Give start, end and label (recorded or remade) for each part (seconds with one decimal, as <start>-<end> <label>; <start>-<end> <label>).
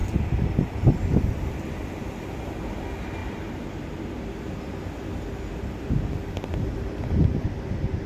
0.0-8.1 recorded